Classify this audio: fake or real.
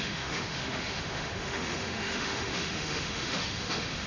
fake